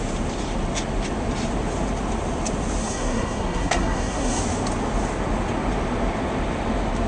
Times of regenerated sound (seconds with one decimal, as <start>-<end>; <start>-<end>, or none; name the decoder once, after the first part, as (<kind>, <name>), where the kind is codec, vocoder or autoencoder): 2.8-4.4 (codec, SNAC)